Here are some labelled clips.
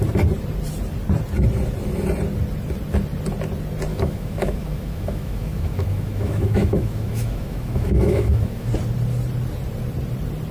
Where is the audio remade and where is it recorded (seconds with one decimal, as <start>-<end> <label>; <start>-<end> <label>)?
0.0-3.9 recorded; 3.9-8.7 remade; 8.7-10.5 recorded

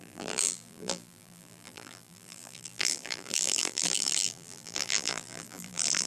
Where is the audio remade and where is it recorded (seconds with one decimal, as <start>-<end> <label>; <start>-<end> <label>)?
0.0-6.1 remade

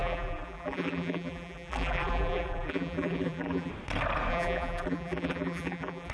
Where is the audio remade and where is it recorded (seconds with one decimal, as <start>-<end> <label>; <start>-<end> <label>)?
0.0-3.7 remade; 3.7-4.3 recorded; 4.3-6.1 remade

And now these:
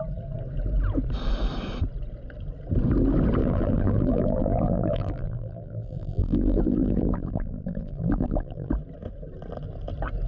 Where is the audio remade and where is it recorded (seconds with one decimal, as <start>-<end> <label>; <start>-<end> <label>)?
0.0-3.4 recorded; 3.4-8.7 remade; 8.7-10.3 recorded

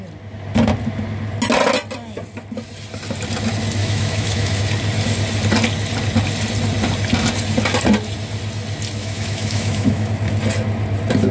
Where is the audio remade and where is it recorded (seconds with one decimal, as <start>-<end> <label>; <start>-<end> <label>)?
0.0-3.8 recorded; 3.8-4.6 remade; 4.6-9.0 recorded; 9.0-10.1 remade; 10.1-11.3 recorded

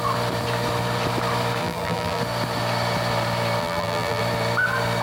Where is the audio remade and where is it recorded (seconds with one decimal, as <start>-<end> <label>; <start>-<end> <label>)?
0.0-1.6 recorded; 1.6-2.2 remade; 2.2-3.6 recorded; 3.6-4.2 remade; 4.2-5.0 recorded